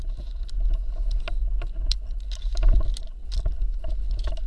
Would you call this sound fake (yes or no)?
no